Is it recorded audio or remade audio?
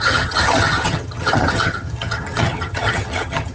remade